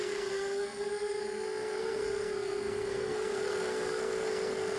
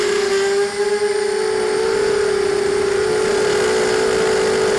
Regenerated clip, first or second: first